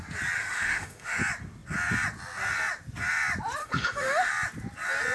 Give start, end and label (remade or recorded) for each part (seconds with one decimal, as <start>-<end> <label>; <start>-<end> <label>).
0.0-0.4 recorded; 0.4-1.2 remade; 1.2-3.6 recorded; 3.6-4.3 remade; 4.3-5.1 recorded